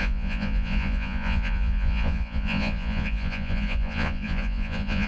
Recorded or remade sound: remade